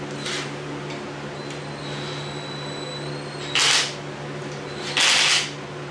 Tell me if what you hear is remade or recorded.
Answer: recorded